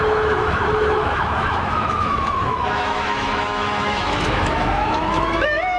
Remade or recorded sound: remade